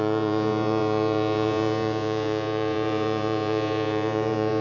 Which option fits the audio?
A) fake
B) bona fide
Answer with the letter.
A